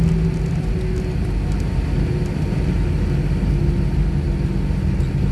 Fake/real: real